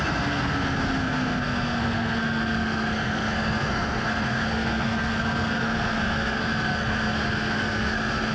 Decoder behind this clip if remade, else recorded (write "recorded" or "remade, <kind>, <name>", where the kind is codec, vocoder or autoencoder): remade, codec, SNAC